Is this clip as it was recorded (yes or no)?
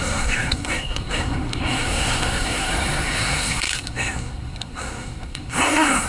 no